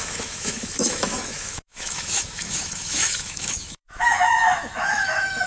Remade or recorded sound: remade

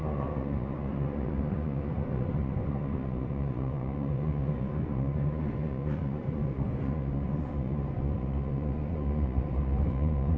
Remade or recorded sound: remade